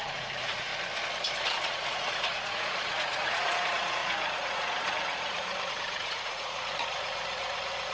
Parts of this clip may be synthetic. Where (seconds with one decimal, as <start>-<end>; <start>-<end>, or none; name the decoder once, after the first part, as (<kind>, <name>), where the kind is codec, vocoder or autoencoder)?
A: 0.0-0.7 (vocoder, Vocos); 1.6-7.9